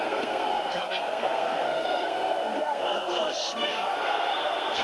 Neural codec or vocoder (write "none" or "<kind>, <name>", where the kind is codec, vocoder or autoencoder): codec, SNAC